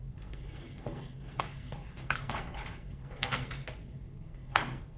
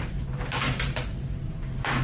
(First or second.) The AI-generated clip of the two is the first